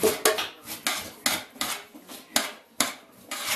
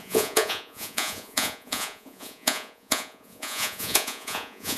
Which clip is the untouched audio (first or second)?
first